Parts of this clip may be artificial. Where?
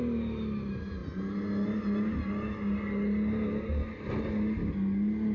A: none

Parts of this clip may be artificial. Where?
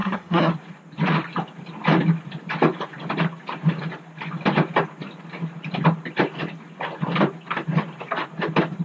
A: 0.0-0.5 (codec, SNAC)